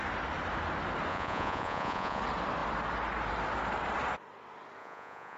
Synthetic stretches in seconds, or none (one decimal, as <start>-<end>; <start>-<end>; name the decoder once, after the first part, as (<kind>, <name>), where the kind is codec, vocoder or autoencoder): 1.1-2.2 (vocoder, Vocos); 4.8-5.4